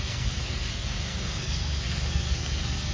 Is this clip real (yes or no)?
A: no